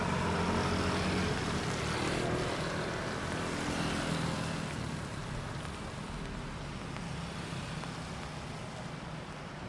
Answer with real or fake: real